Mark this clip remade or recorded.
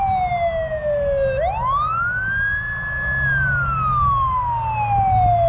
recorded